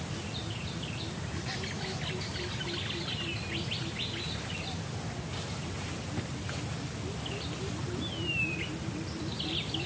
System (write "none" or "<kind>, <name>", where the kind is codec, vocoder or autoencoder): none